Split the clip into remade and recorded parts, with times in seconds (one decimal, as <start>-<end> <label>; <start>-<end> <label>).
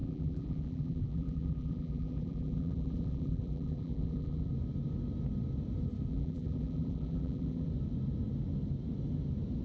0.0-4.5 remade; 4.5-6.1 recorded; 6.1-7.7 remade; 7.7-9.6 recorded